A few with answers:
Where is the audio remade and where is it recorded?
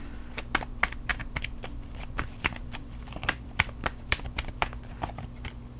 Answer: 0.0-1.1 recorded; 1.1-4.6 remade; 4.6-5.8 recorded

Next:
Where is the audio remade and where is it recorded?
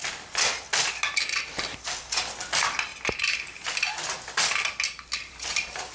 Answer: 0.0-5.9 recorded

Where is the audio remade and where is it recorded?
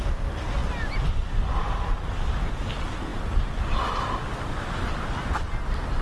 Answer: 0.0-6.0 recorded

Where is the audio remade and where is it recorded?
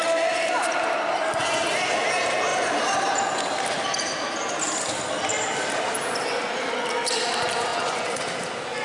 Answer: 0.0-7.7 recorded; 7.7-8.2 remade; 8.2-8.8 recorded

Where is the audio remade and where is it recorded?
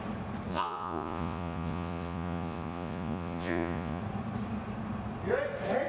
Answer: 0.0-0.5 recorded; 0.5-4.0 remade; 4.0-5.9 recorded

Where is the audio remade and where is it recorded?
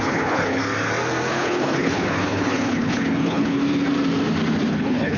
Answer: 0.0-0.6 remade; 0.6-1.3 recorded; 1.3-3.6 remade; 3.6-4.7 recorded; 4.7-5.2 remade